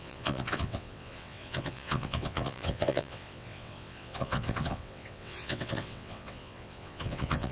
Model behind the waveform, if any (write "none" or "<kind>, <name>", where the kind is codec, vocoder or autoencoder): vocoder, WaveNeXt